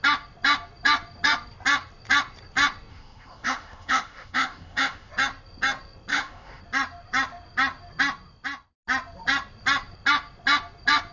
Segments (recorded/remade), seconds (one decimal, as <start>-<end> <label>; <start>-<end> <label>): 0.0-2.9 recorded; 2.9-5.1 remade; 5.1-6.1 recorded; 6.1-6.6 remade; 6.6-11.1 recorded